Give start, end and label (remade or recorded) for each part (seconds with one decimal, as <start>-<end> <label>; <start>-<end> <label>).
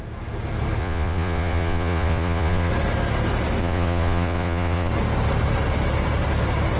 0.0-0.8 recorded; 0.8-2.7 remade; 2.7-3.6 recorded; 3.6-4.9 remade; 4.9-6.8 recorded